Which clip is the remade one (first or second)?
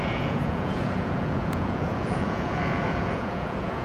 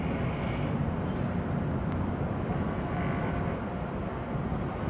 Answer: first